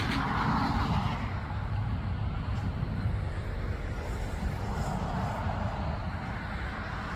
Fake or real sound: real